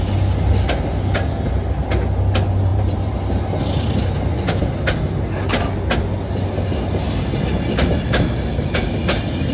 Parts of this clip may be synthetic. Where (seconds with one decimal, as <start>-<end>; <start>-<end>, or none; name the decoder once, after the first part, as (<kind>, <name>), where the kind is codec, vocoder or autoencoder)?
2.7-3.4 (vocoder, BigVGAN v2)